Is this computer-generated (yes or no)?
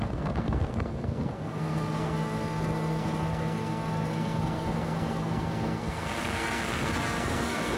yes